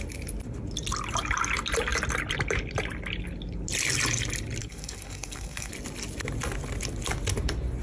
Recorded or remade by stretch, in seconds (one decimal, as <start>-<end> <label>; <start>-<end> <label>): 0.0-4.6 recorded; 4.6-5.7 remade; 5.7-7.8 recorded